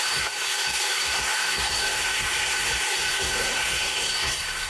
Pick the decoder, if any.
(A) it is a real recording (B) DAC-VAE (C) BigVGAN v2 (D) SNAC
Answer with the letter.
D